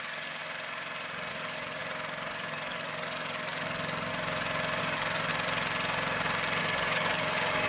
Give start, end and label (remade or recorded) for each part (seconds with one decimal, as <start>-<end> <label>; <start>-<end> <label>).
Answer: 0.0-0.4 remade; 0.4-1.3 recorded; 1.3-1.8 remade; 1.8-2.3 recorded; 2.3-4.1 remade; 4.1-4.8 recorded; 4.8-5.3 remade; 5.3-6.6 recorded; 6.6-7.7 remade